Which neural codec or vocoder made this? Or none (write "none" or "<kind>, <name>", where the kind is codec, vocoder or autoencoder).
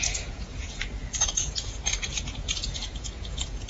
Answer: vocoder, Vocos